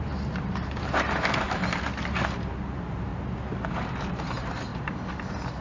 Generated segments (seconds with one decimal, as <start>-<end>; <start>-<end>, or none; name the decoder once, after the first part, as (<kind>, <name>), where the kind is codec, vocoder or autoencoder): 0.0-1.6 (vocoder, BigVGAN v2); 2.1-3.1; 3.7-4.7